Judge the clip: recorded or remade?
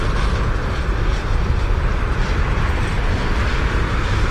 recorded